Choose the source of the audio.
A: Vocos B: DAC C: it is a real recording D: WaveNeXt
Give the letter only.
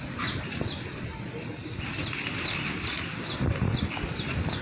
C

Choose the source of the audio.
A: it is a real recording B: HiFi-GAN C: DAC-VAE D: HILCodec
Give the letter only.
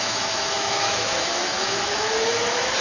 C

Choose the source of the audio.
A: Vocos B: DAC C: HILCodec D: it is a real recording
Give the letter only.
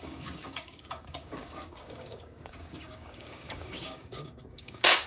B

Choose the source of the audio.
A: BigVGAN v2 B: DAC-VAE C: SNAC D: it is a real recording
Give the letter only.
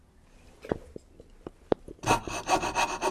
D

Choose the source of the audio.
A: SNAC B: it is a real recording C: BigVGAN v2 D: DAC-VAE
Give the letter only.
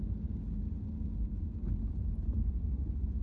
B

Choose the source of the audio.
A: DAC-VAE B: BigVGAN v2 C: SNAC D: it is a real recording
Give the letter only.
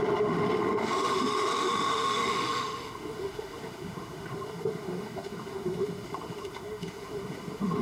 A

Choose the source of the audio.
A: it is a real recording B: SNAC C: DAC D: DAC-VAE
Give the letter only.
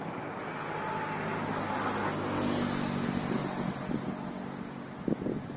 A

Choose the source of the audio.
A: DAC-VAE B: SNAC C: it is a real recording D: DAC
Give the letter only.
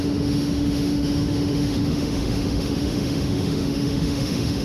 A